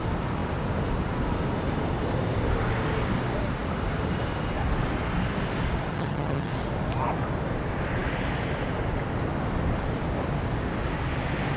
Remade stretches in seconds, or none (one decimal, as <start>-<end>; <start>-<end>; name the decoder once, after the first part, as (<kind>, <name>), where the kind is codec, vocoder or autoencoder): 5.9-6.5 (vocoder, HiFi-GAN)